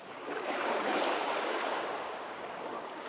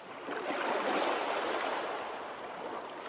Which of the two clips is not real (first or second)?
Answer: first